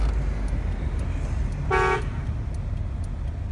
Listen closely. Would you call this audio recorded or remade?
recorded